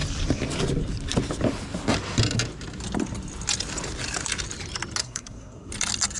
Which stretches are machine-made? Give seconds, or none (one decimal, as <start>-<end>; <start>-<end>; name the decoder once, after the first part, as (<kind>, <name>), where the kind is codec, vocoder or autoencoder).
5.0-5.7 (codec, SNAC)